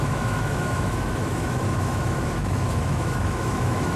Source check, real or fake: fake